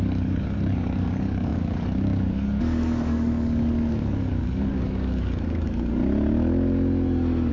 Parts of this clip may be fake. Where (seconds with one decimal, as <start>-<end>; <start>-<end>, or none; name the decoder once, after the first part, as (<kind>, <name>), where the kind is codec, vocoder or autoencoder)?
0.0-6.0 (codec, DAC)